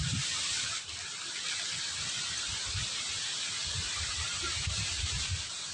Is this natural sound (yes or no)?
yes